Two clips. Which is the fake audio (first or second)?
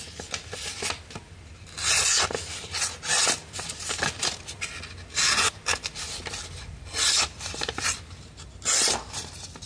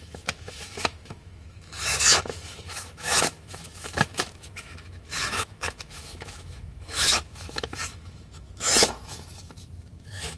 second